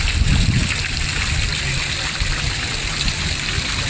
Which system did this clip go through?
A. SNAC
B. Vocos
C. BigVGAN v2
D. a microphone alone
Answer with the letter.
D